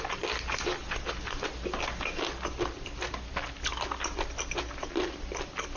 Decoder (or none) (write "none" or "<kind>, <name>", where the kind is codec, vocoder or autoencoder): none